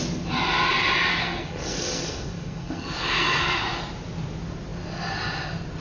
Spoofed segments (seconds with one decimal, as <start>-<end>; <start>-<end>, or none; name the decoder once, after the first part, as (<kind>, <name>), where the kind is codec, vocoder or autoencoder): 1.1-3.6 (codec, SNAC)